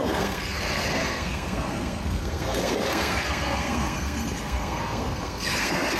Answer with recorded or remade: remade